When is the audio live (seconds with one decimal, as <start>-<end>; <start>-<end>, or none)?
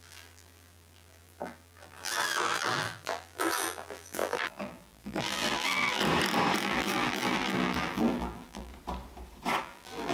6.0-6.6; 8.7-9.6